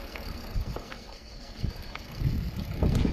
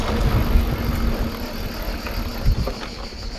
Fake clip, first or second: first